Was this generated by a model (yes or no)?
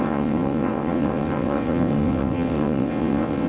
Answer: yes